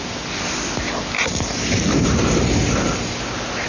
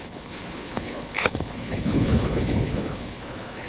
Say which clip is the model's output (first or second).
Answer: second